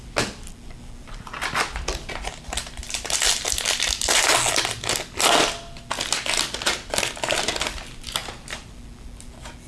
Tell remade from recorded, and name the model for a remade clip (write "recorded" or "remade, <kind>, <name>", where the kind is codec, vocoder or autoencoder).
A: recorded